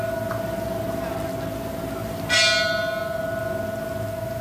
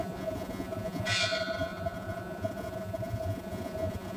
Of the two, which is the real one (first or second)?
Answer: first